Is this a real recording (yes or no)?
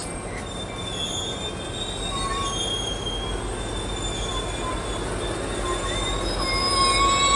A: yes